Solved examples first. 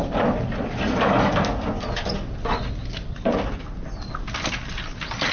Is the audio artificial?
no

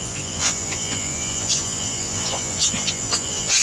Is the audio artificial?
yes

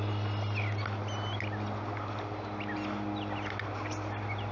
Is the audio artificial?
no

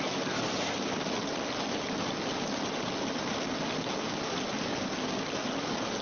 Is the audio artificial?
no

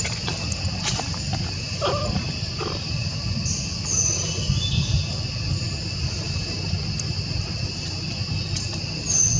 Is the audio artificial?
no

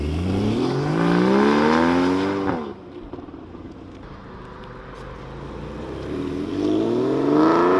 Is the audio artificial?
no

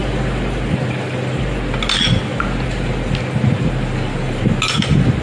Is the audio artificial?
no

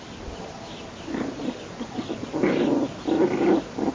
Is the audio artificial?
no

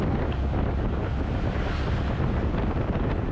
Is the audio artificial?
no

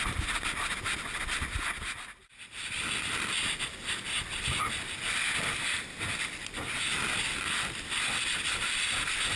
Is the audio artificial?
no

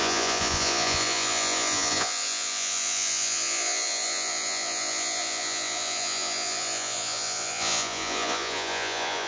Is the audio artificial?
yes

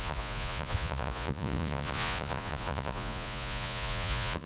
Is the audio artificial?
yes